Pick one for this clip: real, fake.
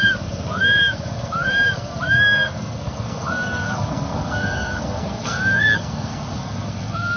fake